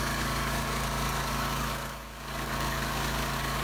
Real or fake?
fake